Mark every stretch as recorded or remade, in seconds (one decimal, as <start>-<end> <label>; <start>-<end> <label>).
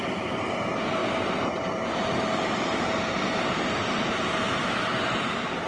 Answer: 0.0-5.7 recorded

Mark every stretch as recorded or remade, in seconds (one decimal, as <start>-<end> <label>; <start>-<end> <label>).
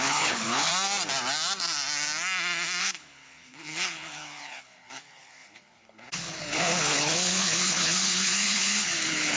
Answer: 0.0-0.7 remade; 0.7-2.8 recorded; 2.8-9.4 remade